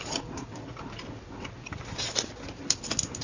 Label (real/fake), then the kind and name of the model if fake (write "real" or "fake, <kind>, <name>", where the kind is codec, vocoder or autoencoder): real